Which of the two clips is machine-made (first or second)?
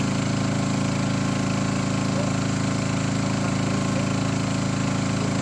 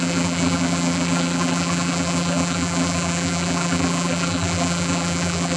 second